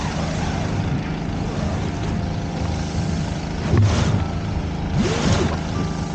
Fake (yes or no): no